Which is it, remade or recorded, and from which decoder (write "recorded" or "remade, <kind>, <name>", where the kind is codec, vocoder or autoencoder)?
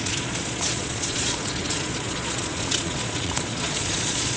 remade, vocoder, Vocos